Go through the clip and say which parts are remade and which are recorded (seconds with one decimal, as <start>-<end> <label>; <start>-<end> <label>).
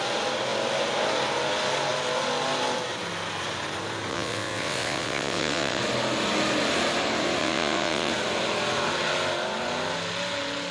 0.0-4.1 recorded; 4.1-5.8 remade; 5.8-7.4 recorded; 7.4-8.1 remade; 8.1-10.7 recorded